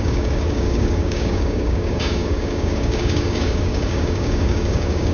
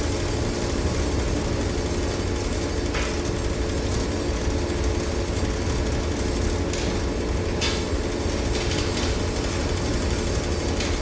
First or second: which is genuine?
second